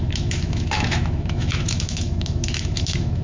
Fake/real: fake